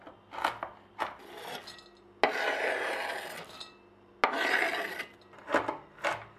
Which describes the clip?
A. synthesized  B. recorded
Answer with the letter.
B